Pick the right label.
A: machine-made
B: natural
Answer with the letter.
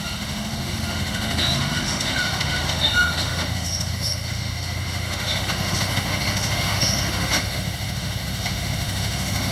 A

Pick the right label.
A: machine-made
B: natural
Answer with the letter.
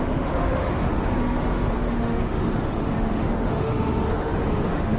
A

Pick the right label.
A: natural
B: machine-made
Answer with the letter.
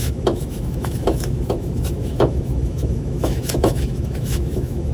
B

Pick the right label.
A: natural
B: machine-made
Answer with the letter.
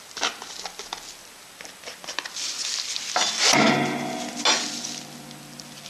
A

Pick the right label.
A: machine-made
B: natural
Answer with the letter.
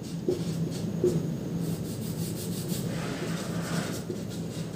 B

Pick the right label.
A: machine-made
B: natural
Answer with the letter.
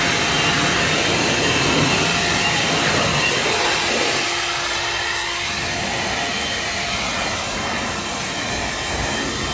B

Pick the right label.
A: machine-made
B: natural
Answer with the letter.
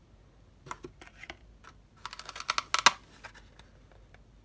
B